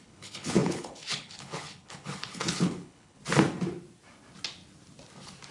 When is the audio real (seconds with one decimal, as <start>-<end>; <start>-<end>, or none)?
3.2-5.5